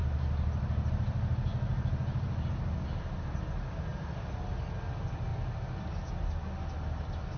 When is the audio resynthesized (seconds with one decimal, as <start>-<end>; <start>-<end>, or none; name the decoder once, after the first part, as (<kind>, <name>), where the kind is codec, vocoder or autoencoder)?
none